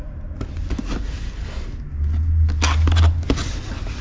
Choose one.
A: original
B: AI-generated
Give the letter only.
A